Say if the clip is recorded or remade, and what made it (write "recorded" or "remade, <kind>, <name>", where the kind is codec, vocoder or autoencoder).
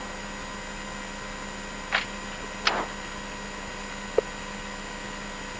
recorded